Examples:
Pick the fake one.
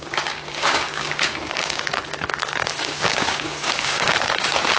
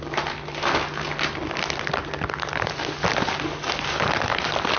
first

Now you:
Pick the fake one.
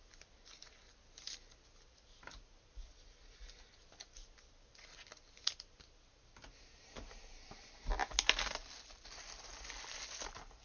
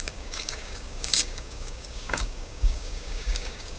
second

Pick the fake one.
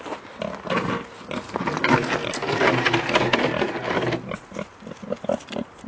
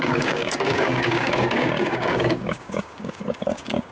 second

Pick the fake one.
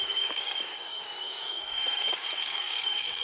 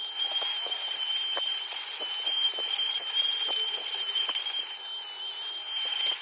first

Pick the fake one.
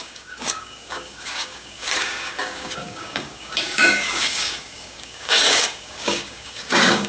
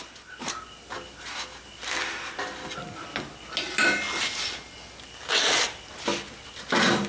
first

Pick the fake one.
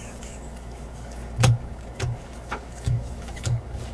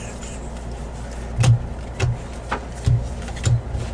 first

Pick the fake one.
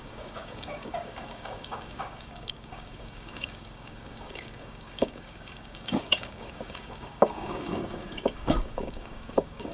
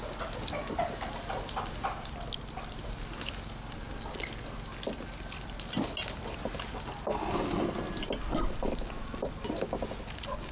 first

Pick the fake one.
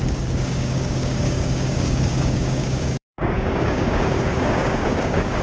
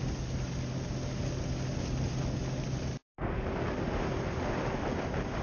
first